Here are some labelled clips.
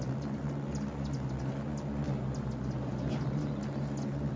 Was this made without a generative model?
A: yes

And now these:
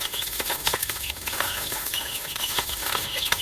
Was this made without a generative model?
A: no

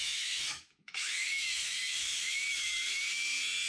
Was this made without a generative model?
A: no